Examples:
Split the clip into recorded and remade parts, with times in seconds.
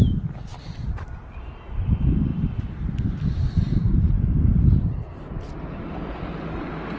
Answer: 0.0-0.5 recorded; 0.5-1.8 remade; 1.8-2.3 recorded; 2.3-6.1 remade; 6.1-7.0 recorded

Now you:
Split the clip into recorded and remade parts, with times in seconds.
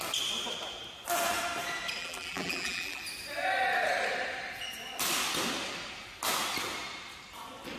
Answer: 0.0-2.0 recorded; 2.0-3.0 remade; 3.0-7.8 recorded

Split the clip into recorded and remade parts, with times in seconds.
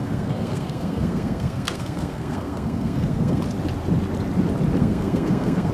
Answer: 0.0-3.4 remade; 3.4-4.8 recorded; 4.8-5.7 remade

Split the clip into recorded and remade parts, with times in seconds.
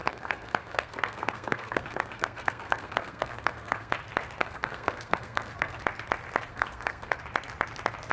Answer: 0.0-3.9 remade; 3.9-4.4 recorded; 4.4-5.8 remade; 5.8-6.5 recorded; 6.5-7.2 remade; 7.2-8.1 recorded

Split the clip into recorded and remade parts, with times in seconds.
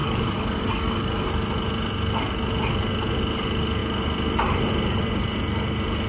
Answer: 0.0-1.3 remade; 1.3-6.1 recorded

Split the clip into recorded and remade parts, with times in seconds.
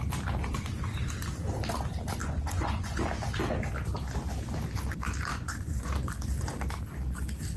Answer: 0.0-2.2 recorded; 2.2-3.0 remade; 3.0-5.3 recorded; 5.3-5.9 remade; 5.9-7.6 recorded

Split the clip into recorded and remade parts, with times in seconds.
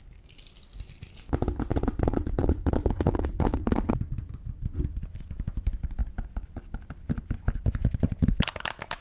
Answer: 0.0-1.7 recorded; 1.7-3.9 remade; 3.9-9.0 recorded